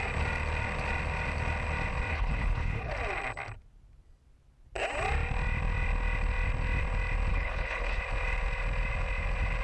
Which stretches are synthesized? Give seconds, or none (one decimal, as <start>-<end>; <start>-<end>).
2.1-2.9; 7.3-8.0